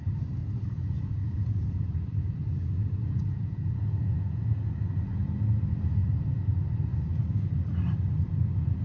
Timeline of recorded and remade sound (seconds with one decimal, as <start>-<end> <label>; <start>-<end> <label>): 0.0-0.4 recorded; 0.4-4.4 remade; 4.4-8.8 recorded